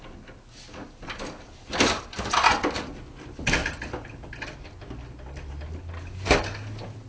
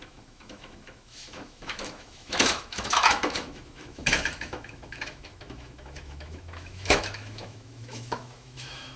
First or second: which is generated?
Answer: second